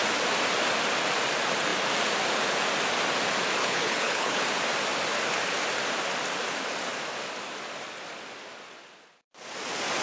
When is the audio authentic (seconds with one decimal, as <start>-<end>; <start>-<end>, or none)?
0.0-3.6; 4.4-10.0